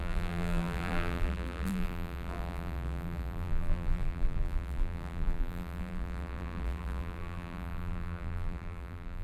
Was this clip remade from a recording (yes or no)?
yes